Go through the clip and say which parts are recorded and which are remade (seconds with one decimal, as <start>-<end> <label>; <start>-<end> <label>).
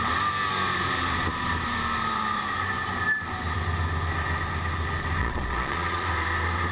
0.0-5.2 recorded; 5.2-6.1 remade; 6.1-6.7 recorded